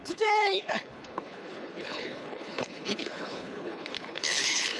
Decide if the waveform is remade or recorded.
remade